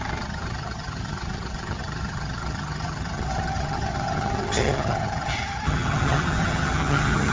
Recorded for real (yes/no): no